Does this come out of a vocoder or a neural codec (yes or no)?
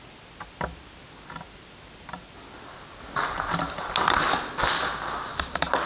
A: no